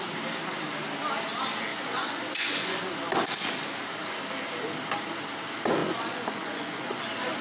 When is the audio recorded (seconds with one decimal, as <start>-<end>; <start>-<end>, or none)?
0.0-1.7; 2.8-5.8; 7.0-7.4